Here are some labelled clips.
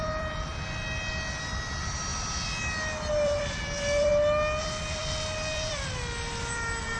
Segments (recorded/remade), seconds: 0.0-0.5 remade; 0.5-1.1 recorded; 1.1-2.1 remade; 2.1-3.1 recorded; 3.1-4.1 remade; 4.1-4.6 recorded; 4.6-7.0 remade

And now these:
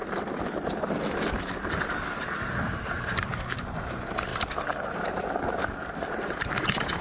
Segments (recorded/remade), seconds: 0.0-2.8 recorded; 2.8-7.0 remade

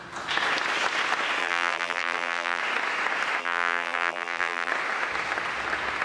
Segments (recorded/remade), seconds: 0.0-1.4 recorded; 1.4-2.6 remade; 2.6-3.4 recorded; 3.4-4.7 remade; 4.7-6.0 recorded

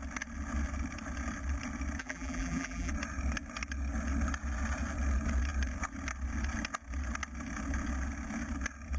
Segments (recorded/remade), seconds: 0.0-2.0 recorded; 2.0-2.9 remade; 2.9-9.0 recorded

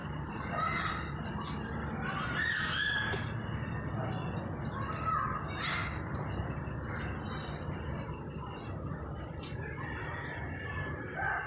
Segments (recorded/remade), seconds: 0.0-1.6 remade; 1.6-11.5 recorded